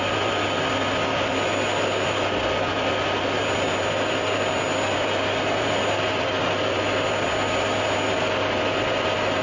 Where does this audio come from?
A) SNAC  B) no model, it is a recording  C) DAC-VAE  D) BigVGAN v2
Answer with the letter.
B